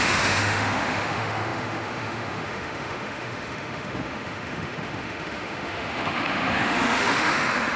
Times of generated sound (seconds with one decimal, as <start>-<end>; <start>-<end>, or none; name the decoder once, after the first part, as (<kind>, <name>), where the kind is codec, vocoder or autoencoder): 0.0-7.8 (autoencoder, DAC-VAE)